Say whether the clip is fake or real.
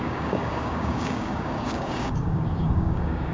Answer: fake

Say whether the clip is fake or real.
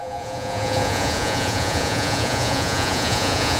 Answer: fake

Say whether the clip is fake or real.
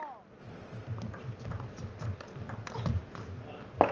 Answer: real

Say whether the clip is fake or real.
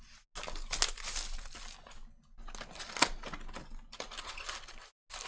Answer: real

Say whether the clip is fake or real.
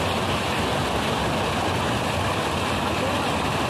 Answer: real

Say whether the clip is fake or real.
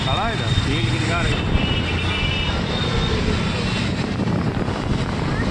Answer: real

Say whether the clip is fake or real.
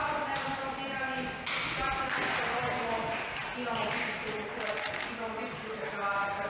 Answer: real